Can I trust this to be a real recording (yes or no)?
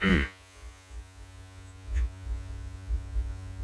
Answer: no